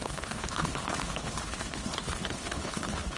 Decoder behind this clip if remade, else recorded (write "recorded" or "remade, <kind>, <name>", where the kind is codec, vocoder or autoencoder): remade, codec, HILCodec